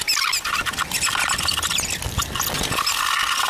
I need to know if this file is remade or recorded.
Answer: recorded